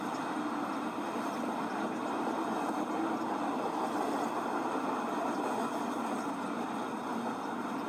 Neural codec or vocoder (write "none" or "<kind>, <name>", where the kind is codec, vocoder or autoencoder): none